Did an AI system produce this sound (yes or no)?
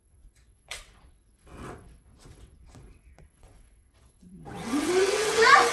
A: yes